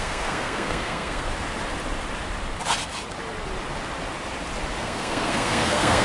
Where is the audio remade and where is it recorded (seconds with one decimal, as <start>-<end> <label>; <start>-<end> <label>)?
0.0-1.3 remade; 1.3-4.8 recorded; 4.8-6.0 remade